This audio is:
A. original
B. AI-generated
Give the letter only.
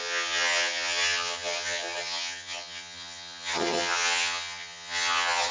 B